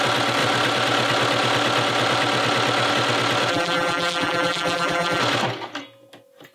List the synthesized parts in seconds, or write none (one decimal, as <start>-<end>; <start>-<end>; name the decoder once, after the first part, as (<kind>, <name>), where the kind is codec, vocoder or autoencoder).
3.5-5.2 (vocoder, BigVGAN v2)